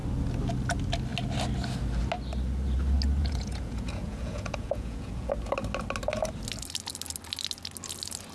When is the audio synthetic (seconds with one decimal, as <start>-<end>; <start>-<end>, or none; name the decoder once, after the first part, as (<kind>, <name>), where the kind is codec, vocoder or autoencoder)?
3.2-5.3 (vocoder, Vocos)